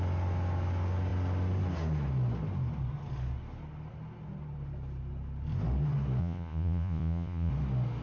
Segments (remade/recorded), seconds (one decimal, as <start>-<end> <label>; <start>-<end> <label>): 0.0-6.2 recorded; 6.2-7.5 remade; 7.5-8.0 recorded